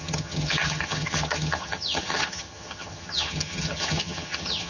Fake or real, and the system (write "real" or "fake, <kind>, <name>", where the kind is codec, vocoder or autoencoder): fake, vocoder, HiFi-GAN